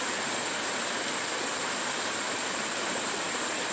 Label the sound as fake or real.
real